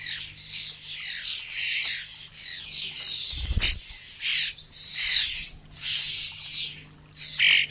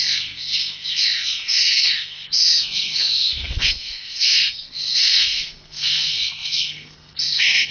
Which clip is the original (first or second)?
first